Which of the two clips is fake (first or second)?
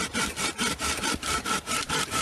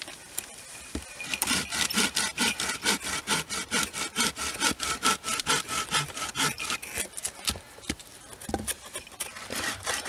first